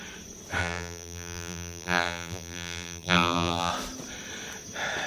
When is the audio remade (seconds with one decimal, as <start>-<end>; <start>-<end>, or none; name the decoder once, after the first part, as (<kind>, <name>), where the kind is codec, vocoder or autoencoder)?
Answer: 0.6-3.7 (vocoder, BigVGAN v2)